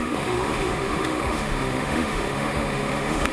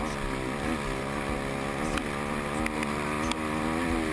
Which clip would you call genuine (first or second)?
second